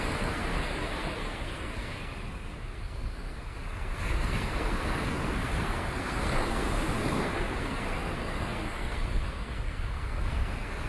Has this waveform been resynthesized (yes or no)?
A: yes